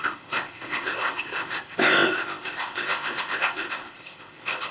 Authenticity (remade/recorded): remade